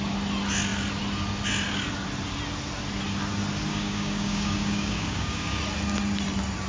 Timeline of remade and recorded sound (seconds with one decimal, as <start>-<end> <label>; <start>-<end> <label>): 0.0-3.7 recorded; 3.7-5.6 remade; 5.6-6.7 recorded